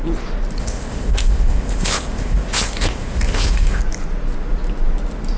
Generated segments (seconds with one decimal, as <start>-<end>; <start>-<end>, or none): 0.6-3.8